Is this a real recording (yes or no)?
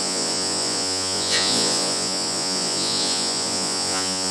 no